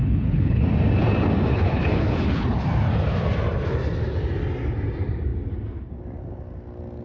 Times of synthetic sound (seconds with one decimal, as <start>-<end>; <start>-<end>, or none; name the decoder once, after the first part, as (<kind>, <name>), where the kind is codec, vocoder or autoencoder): 0.0-0.6 (codec, HILCodec); 1.5-2.6